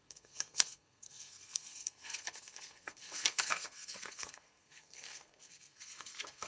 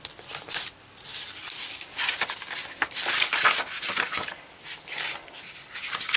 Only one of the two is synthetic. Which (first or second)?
first